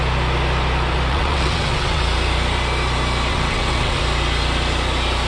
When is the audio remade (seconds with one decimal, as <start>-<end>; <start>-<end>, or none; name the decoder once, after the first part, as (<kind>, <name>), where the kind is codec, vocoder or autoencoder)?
1.1-2.0 (vocoder, WaveNeXt); 3.3-4.0